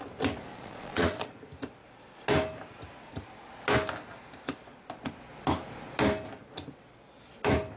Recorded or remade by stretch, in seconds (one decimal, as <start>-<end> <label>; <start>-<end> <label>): 0.0-0.5 recorded; 0.5-1.3 remade; 1.3-7.8 recorded